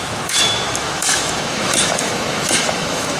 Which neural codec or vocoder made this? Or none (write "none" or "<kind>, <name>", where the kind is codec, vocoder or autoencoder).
autoencoder, DAC-VAE